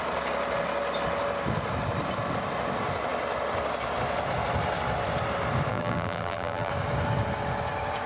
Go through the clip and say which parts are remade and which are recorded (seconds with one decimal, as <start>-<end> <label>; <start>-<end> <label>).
0.0-5.7 recorded; 5.7-6.7 remade; 6.7-8.1 recorded